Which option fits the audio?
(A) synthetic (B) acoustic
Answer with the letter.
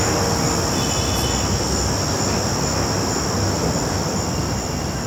B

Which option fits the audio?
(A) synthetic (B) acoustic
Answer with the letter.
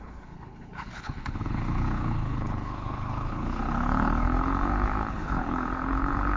A